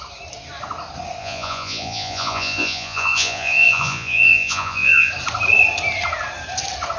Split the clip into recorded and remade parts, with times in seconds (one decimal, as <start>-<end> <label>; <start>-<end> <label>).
0.0-1.2 recorded; 1.2-5.1 remade; 5.1-7.0 recorded